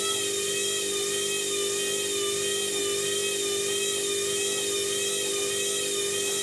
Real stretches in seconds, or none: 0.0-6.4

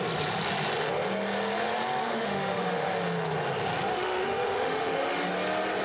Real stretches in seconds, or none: 0.0-2.0; 2.9-3.9; 5.3-5.8